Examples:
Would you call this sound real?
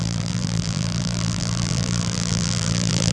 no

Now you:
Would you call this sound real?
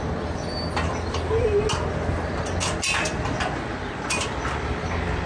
yes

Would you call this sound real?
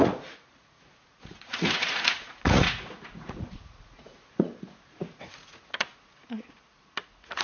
no